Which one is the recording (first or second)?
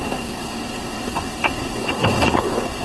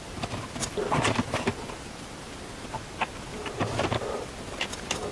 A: second